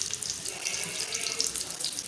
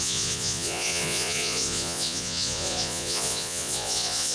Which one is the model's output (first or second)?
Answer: second